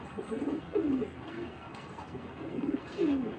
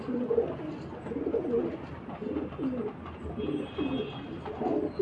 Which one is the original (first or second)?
second